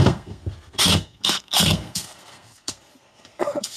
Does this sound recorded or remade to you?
remade